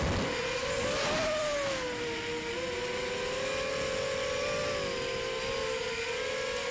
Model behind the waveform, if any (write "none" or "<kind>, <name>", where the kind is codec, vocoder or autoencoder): none